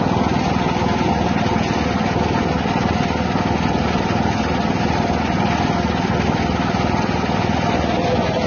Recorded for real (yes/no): yes